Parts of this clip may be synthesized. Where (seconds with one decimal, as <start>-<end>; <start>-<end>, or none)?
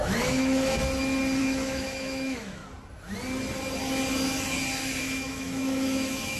0.0-0.8; 1.4-2.6; 5.0-6.4